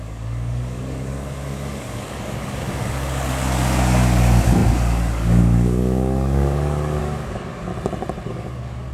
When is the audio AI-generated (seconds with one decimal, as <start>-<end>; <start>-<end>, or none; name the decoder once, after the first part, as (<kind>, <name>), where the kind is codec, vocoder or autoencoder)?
0.0-7.7 (codec, DAC); 8.3-8.9